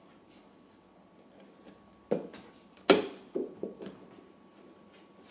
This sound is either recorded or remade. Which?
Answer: recorded